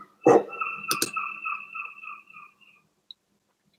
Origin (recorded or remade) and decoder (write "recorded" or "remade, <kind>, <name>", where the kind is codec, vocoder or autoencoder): recorded